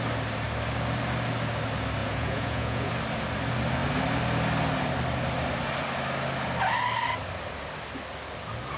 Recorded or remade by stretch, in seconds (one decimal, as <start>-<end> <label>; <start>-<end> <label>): 0.0-2.0 recorded; 2.0-2.9 remade; 2.9-8.8 recorded